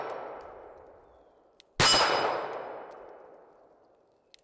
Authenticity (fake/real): real